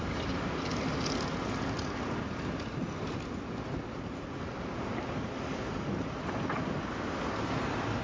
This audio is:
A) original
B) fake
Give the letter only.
A